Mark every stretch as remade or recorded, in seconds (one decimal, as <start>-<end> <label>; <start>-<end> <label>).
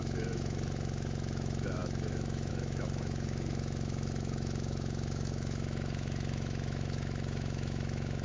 0.0-8.2 remade